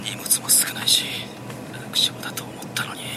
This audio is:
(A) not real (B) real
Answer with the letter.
A